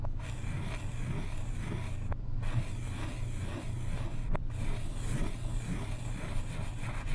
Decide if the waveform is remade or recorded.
recorded